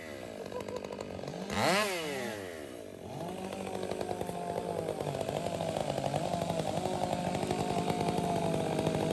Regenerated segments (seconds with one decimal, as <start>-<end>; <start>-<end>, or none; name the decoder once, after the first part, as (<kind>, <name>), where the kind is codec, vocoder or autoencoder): none